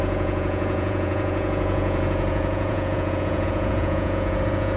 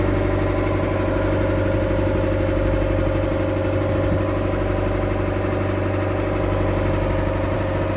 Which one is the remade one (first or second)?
first